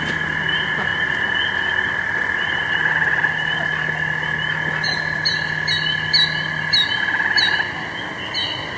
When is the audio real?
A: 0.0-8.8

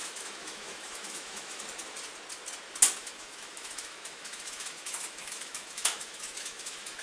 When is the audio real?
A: 1.6-3.0

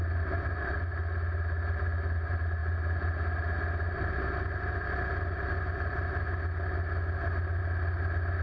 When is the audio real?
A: 0.0-8.4

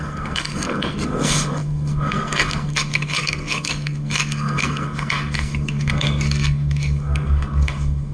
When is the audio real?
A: none

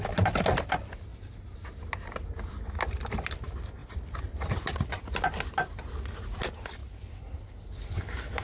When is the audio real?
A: 0.0-8.4

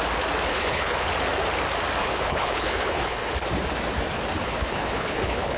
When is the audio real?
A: 0.0-0.5; 1.1-2.0; 3.3-4.4

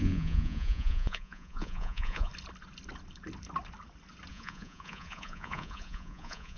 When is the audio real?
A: 2.3-4.3

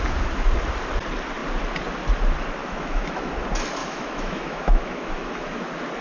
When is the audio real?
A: 0.0-2.6; 3.3-3.8; 5.6-6.0